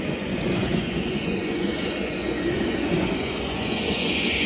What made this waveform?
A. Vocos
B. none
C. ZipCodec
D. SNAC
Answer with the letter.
A